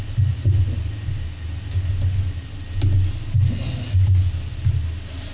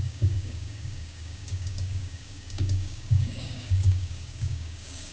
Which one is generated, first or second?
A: second